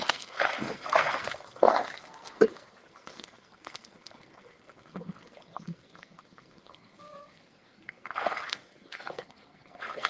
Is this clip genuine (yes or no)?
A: no